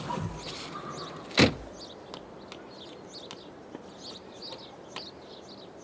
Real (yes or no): yes